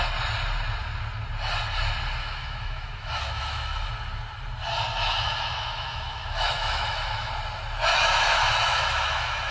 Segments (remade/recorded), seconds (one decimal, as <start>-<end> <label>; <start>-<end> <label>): 0.0-2.2 recorded; 2.2-3.9 remade; 3.9-5.0 recorded; 5.0-7.3 remade; 7.3-7.9 recorded; 7.9-9.5 remade